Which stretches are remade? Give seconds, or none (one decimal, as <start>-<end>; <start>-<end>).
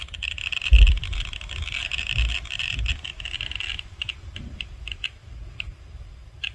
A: 0.0-5.2; 5.8-6.5